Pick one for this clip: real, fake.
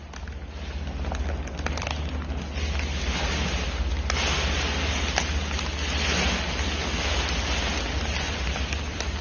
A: real